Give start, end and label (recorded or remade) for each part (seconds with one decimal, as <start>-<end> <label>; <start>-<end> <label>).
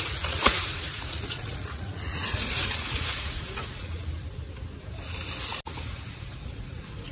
0.0-4.0 remade; 4.0-5.9 recorded; 5.9-7.1 remade